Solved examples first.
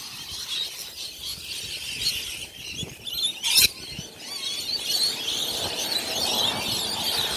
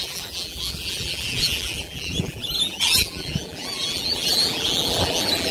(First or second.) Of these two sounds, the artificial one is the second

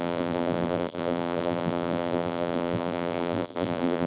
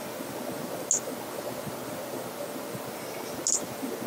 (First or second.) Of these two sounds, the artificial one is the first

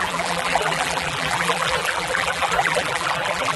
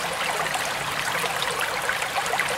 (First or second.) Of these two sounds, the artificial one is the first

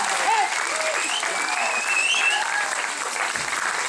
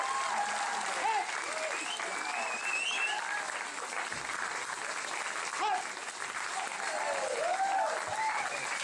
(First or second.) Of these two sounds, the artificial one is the first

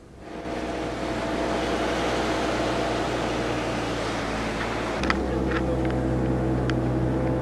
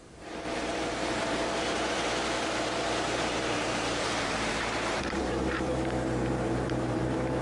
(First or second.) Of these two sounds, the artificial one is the second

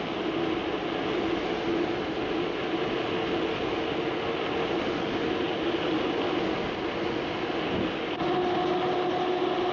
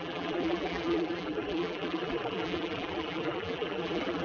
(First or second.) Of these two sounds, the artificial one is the second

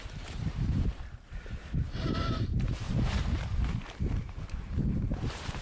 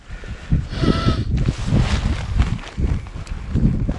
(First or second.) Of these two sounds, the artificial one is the first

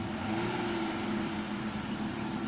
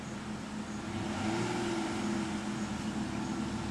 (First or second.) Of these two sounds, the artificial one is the first